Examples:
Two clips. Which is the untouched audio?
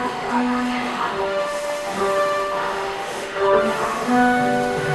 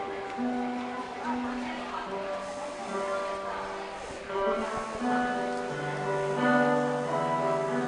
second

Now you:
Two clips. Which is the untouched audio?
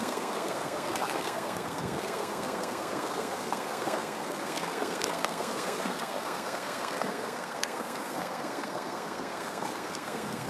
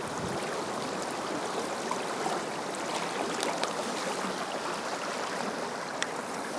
second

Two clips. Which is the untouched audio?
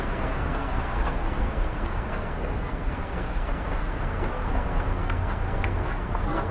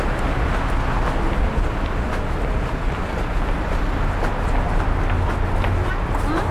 second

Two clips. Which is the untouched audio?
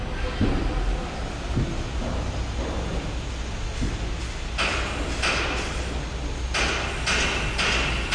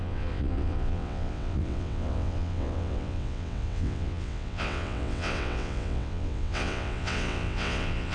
first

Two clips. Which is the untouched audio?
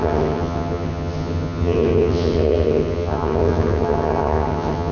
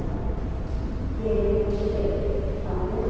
second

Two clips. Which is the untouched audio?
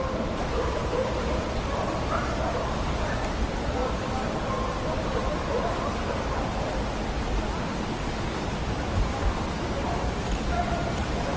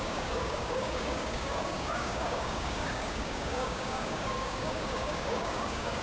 first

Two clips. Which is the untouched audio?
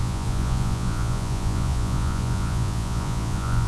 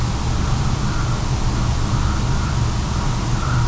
second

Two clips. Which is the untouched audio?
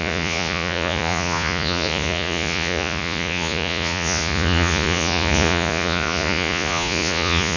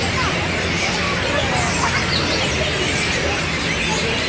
second